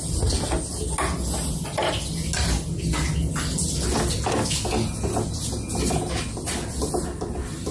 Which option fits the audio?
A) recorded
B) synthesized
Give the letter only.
A